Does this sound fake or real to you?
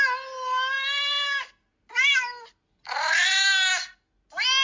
real